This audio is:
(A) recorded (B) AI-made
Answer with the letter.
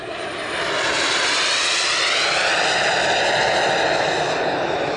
A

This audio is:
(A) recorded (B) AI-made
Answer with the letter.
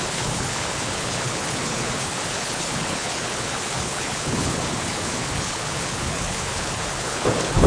B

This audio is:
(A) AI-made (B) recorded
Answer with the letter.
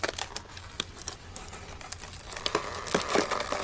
B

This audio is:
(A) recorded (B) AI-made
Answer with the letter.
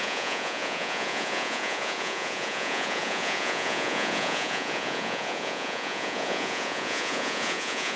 B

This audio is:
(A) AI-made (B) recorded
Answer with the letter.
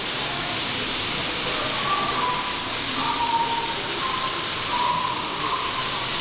B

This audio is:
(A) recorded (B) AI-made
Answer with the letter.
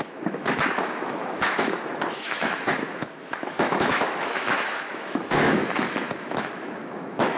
B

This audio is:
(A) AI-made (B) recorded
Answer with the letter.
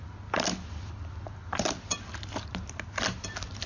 B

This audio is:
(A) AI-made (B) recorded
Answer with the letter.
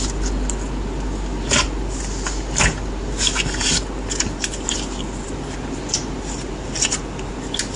B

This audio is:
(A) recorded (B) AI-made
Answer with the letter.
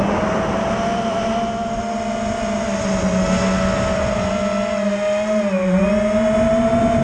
A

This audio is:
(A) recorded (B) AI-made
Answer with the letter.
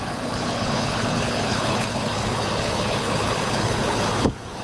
B